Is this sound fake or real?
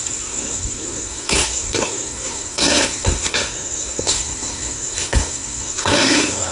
fake